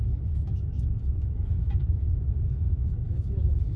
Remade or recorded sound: remade